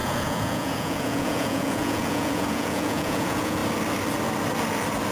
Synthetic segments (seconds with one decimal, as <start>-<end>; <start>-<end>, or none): 0.0-3.6

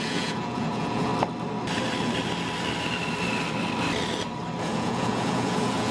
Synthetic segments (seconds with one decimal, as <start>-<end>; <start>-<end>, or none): 0.0-1.1; 4.6-5.9